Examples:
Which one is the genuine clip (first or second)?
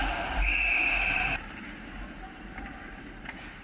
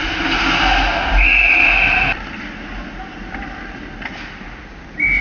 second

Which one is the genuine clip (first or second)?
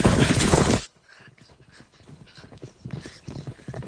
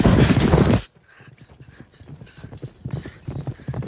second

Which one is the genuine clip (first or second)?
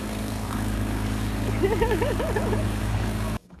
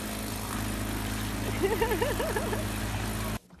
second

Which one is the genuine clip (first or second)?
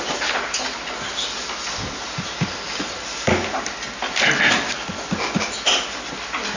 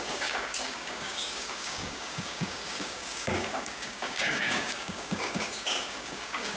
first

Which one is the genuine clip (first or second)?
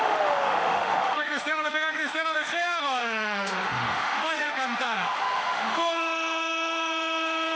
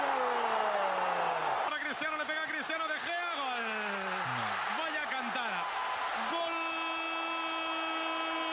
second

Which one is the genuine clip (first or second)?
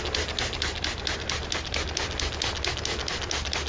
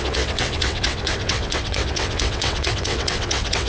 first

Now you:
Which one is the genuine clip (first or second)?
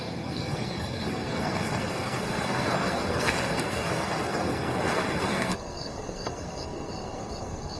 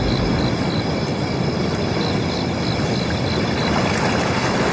second